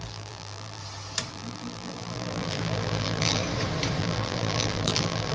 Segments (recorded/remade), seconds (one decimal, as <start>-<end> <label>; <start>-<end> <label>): 0.0-0.8 remade; 0.8-1.3 recorded; 1.3-3.4 remade; 3.4-4.0 recorded; 4.0-5.3 remade